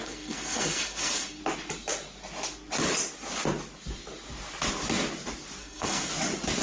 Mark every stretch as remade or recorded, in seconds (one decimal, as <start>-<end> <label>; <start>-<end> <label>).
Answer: 0.0-1.4 remade; 1.4-5.6 recorded; 5.6-6.1 remade; 6.1-6.6 recorded